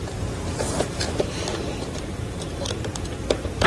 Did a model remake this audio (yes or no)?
yes